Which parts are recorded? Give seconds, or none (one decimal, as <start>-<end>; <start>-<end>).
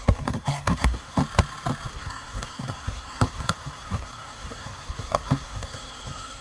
1.2-1.9